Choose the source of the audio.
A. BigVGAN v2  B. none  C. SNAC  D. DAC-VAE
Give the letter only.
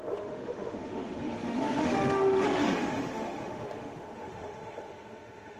D